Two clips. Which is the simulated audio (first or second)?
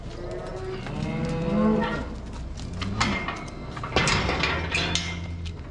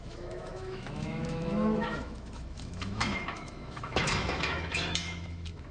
second